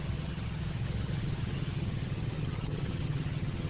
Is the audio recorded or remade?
remade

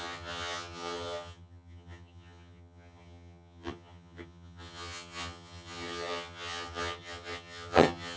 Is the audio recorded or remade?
remade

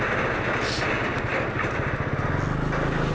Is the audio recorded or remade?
recorded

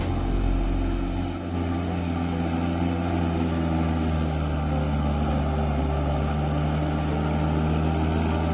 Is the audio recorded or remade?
recorded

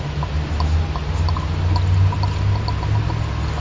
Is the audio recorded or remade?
recorded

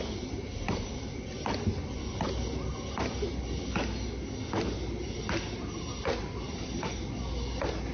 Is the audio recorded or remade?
recorded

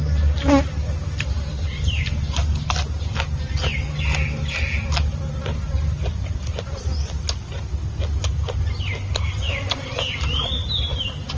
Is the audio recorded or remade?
recorded